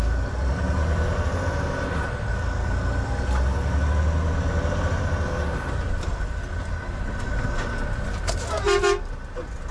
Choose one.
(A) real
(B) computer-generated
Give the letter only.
A